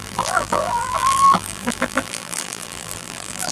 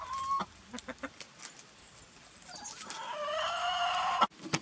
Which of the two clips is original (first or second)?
second